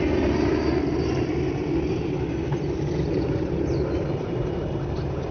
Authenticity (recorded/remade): recorded